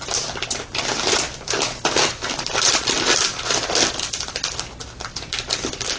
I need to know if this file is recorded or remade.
recorded